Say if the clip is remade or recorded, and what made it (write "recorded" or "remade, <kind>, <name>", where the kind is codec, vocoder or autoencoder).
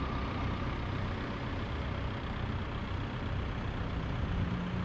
recorded